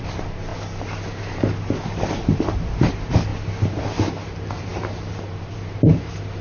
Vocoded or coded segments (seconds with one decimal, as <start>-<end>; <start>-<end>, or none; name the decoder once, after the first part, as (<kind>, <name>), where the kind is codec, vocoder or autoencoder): 0.0-0.5 (vocoder, BigVGAN v2); 1.9-3.3; 4.1-6.4